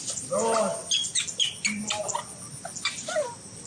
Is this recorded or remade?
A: recorded